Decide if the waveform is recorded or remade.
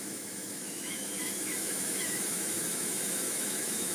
remade